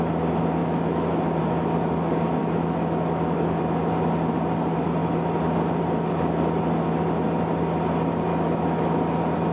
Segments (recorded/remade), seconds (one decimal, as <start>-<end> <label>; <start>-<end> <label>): 0.0-0.6 recorded; 0.6-1.4 remade; 1.4-2.4 recorded; 2.4-3.6 remade; 3.6-8.3 recorded; 8.3-8.9 remade; 8.9-9.5 recorded